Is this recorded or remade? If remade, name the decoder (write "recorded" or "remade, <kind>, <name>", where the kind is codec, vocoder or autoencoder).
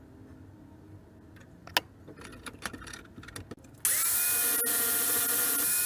recorded